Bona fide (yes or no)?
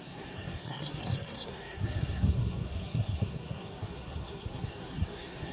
no